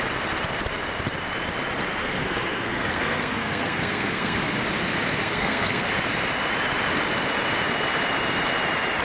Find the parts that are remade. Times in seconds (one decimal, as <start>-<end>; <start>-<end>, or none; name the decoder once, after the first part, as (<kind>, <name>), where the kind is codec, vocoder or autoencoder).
2.0-4.5 (codec, SNAC); 5.2-5.9